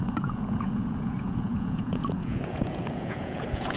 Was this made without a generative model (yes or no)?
no